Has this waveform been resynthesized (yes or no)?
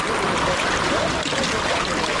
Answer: no